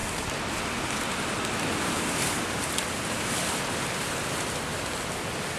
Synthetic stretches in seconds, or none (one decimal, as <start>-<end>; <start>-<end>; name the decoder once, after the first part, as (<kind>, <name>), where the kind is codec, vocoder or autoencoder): none